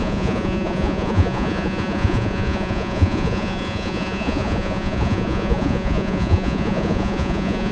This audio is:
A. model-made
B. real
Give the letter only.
A